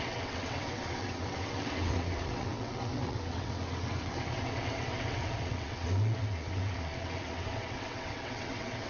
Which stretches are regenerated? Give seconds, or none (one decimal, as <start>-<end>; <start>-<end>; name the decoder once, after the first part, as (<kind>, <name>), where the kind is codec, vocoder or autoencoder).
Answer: 0.0-8.9 (vocoder, WaveNeXt)